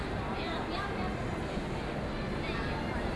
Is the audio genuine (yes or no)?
yes